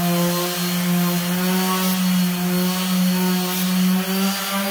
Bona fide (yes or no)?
yes